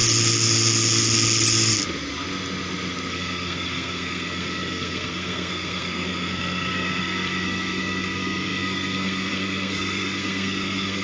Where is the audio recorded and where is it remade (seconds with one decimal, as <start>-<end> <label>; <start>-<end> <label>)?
0.0-3.1 recorded; 3.1-11.0 remade